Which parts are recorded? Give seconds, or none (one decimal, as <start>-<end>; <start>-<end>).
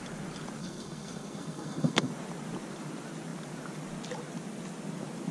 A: 0.0-0.6; 2.1-5.3